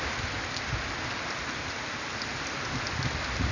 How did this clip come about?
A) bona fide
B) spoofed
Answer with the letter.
A